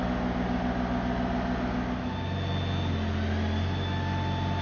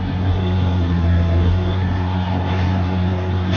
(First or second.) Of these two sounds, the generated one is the second